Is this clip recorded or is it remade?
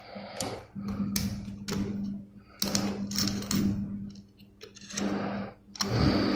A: recorded